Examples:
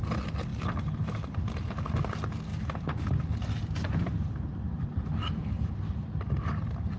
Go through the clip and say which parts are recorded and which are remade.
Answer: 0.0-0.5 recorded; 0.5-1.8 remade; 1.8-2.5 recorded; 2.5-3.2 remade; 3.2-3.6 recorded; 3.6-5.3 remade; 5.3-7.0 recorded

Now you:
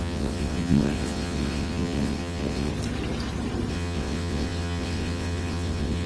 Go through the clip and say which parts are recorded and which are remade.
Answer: 0.0-2.7 remade; 2.7-3.7 recorded; 3.7-6.1 remade

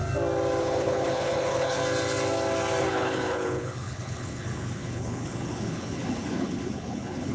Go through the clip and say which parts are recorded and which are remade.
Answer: 0.0-0.6 recorded; 0.6-1.8 remade; 1.8-2.8 recorded; 2.8-7.3 remade